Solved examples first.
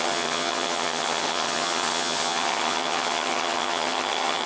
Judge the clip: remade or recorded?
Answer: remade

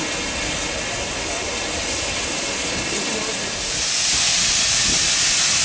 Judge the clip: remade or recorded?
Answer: recorded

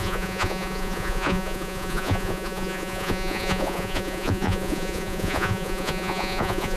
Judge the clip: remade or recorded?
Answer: remade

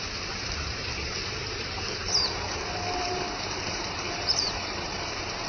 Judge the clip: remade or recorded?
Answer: remade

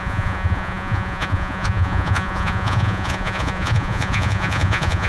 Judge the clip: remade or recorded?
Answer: remade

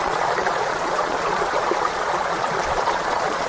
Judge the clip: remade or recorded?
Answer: remade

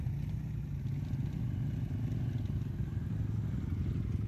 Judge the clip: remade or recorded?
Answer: recorded